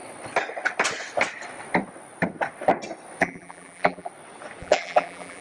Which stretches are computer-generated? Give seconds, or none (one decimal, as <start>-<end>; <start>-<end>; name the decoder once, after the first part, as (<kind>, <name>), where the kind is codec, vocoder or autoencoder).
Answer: 3.2-4.1 (vocoder, BigVGAN v2); 4.6-5.4

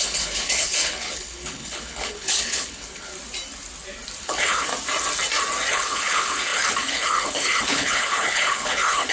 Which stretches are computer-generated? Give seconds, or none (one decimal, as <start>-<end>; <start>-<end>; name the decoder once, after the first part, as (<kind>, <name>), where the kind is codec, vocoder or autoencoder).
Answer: 0.0-3.1 (codec, HILCodec); 4.2-4.7; 5.7-9.1

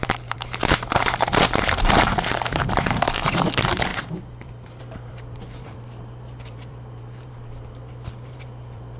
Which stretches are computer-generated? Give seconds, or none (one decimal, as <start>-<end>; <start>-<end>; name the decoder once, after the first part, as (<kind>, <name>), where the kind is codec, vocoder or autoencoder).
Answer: 0.0-9.0 (vocoder, BigVGAN v2)